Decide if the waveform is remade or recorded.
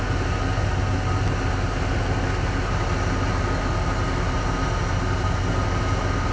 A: recorded